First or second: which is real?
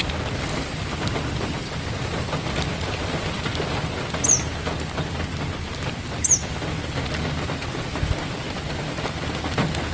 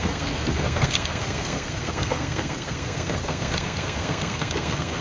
first